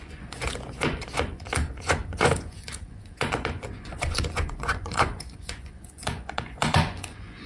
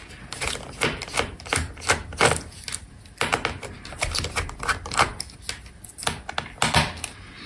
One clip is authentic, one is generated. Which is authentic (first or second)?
second